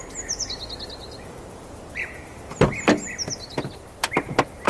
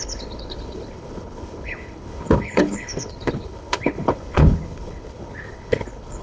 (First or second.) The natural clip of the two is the first